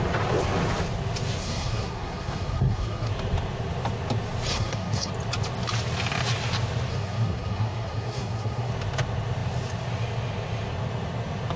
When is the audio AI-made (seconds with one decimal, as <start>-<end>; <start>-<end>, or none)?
1.4-3.1; 4.5-5.1; 6.9-8.7